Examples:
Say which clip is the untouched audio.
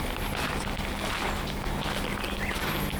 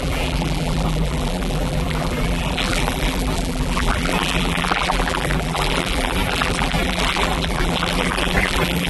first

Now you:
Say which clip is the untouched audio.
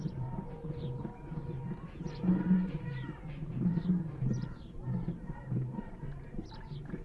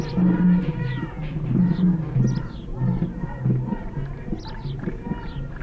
second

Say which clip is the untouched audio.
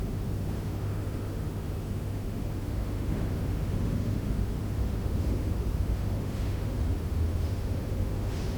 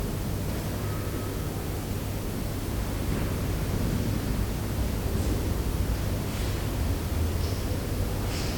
second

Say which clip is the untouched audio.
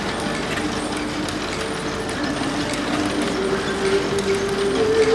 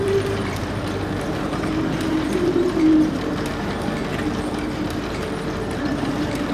first